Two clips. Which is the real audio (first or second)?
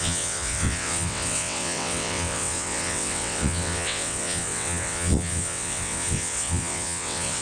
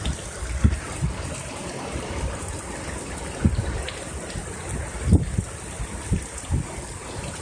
second